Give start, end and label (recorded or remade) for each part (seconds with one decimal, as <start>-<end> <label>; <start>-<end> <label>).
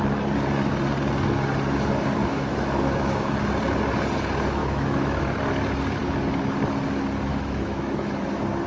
0.0-2.2 recorded; 2.2-3.3 remade; 3.3-4.6 recorded; 4.6-5.2 remade; 5.2-7.3 recorded; 7.3-8.2 remade; 8.2-8.7 recorded